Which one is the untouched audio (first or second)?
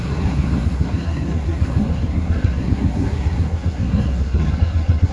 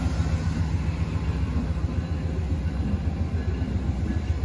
second